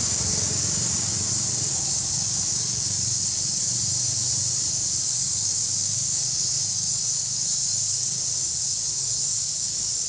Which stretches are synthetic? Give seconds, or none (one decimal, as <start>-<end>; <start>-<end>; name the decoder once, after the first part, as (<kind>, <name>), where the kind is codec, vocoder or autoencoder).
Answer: 0.0-3.6 (codec, DAC); 4.7-10.1